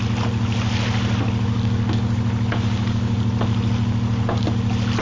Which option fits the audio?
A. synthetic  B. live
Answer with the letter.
B